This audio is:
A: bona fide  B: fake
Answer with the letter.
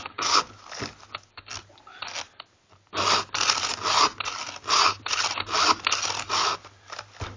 A